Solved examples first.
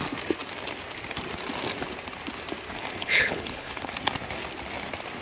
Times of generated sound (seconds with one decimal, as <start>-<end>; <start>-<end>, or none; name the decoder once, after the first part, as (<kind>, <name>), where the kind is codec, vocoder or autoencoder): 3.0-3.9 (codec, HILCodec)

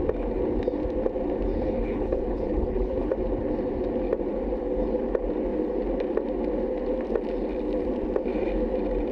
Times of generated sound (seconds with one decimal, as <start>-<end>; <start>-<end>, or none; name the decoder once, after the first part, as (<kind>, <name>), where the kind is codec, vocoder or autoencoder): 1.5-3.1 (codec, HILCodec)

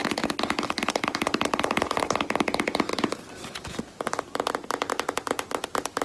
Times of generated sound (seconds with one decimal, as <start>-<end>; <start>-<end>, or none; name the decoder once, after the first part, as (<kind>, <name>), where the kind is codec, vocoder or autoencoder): none

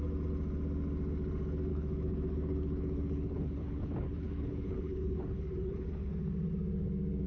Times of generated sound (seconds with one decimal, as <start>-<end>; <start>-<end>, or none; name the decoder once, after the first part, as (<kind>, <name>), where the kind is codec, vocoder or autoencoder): 1.7-6.1 (codec, HILCodec)

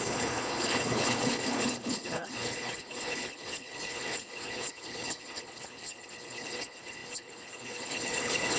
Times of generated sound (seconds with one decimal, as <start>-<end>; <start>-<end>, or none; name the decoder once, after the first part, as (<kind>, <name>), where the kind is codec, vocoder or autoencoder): 0.0-8.6 (codec, HILCodec)